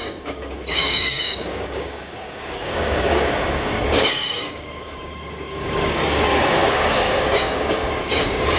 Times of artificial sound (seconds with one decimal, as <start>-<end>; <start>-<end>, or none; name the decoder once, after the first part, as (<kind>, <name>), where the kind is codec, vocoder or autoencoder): 0.0-8.6 (codec, DAC)